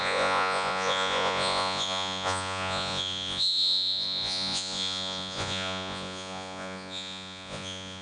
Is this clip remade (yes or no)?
yes